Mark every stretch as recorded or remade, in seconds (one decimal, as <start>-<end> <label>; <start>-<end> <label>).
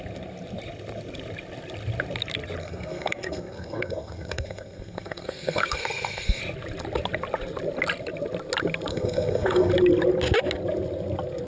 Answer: 0.0-2.6 recorded; 2.6-6.4 remade; 6.4-8.9 recorded; 8.9-9.7 remade; 9.7-11.5 recorded